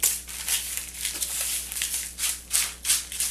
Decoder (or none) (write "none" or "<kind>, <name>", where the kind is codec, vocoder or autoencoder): none